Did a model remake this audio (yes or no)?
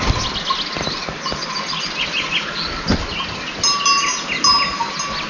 no